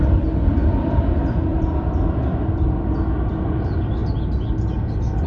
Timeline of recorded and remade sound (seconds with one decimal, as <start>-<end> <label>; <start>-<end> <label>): 0.0-5.3 recorded